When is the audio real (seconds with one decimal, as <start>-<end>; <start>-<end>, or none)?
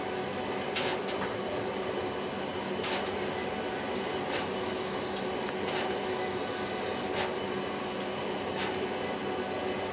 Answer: 0.0-0.9; 2.1-9.9